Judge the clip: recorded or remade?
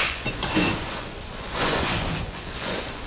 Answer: remade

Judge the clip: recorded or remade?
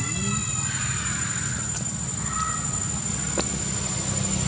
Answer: recorded